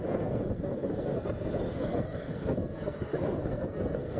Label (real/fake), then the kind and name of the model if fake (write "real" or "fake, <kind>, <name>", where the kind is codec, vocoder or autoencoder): fake, codec, SNAC